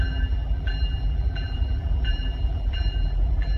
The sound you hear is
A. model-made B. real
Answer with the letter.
A